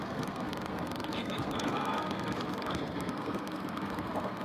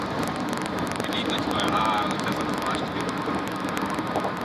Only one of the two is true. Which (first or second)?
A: second